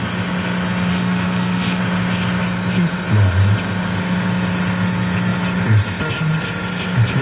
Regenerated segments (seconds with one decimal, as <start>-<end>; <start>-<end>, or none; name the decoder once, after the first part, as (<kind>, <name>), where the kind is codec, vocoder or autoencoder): 0.9-1.8 (autoencoder, DAC-VAE)